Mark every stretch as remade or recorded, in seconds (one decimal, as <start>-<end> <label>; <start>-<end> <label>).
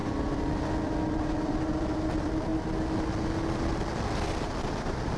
0.0-2.5 remade; 2.5-4.7 recorded; 4.7-5.2 remade